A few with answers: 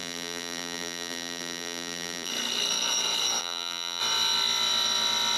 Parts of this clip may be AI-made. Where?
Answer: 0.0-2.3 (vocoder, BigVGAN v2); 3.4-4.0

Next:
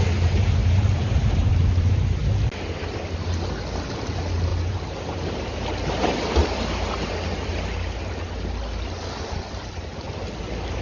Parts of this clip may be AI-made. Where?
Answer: 0.6-1.5 (vocoder, BigVGAN v2); 4.5-5.1; 6.4-7.5

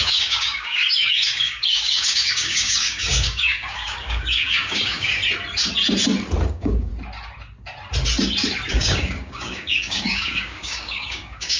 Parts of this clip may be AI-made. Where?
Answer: 0.0-5.2 (codec, DAC); 6.5-6.9; 8.7-11.6